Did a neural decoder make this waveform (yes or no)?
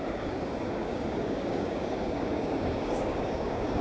yes